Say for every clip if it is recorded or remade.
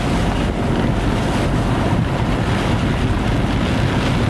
recorded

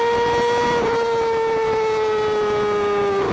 recorded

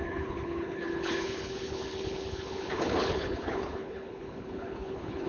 remade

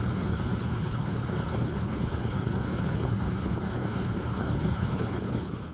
remade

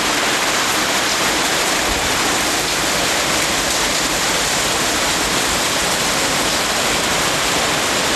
recorded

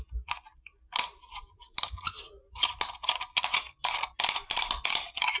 recorded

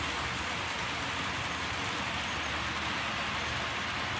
recorded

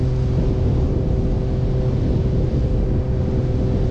recorded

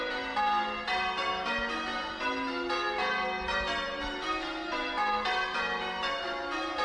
recorded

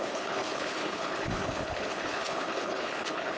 remade